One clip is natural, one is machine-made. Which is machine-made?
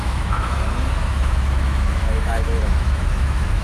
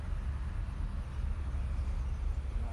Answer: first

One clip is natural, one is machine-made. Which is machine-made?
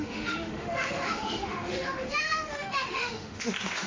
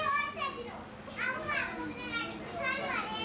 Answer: first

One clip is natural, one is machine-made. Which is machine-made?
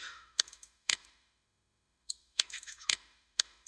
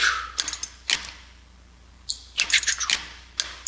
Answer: first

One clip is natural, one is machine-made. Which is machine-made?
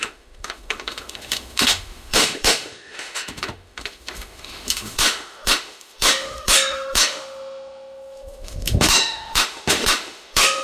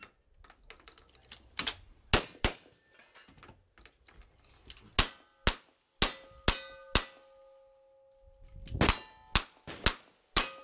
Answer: first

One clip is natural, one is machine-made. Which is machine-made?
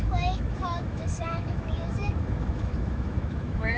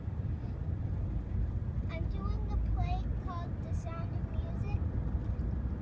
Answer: first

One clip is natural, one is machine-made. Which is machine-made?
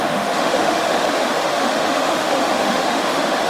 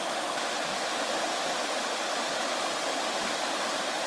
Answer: first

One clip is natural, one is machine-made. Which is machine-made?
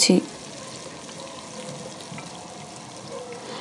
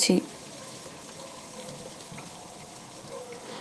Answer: second